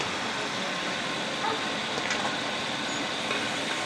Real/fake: real